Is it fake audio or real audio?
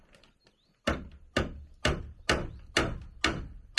real